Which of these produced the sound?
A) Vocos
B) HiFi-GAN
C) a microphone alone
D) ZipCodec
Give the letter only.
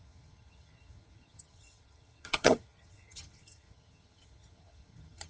B